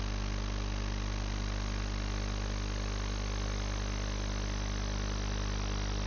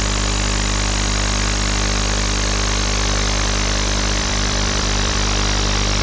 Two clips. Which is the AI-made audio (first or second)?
second